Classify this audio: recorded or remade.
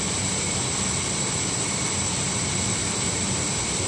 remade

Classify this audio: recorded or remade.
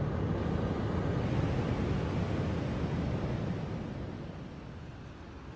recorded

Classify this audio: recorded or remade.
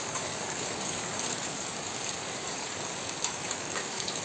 remade